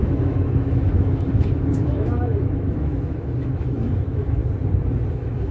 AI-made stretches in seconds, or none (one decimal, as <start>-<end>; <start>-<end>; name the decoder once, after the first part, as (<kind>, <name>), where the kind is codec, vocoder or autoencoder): 0.0-4.4 (autoencoder, DAC-VAE); 5.1-5.5

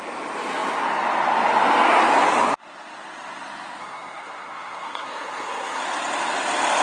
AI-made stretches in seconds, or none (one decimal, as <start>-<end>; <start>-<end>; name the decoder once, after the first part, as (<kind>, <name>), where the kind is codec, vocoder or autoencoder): 3.8-5.8 (codec, SNAC)

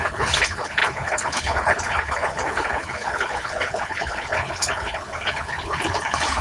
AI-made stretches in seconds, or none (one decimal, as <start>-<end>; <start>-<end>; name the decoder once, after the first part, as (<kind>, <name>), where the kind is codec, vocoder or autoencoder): 0.0-6.4 (codec, HILCodec)

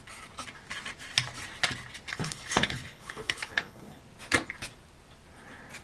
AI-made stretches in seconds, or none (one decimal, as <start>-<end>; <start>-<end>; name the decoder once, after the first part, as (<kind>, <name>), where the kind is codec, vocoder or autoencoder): 2.1-4.0 (codec, HILCodec)

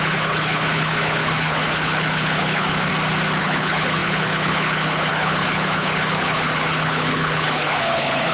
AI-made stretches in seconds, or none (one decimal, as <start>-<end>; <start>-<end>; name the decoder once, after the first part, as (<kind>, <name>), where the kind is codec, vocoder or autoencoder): 0.0-2.9 (codec, HILCodec); 3.4-8.3